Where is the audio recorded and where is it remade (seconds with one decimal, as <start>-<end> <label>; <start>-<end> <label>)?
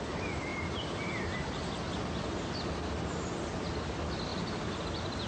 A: 0.0-0.5 recorded; 0.5-1.7 remade; 1.7-5.3 recorded